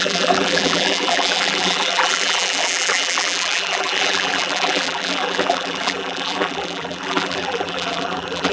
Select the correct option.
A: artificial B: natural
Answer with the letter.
A